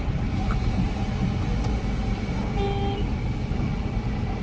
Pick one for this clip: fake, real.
real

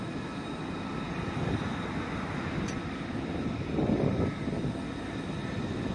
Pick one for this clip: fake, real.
real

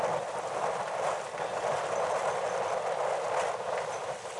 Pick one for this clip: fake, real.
real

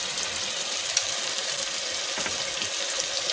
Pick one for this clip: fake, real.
real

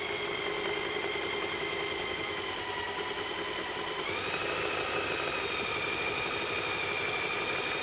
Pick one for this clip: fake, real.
real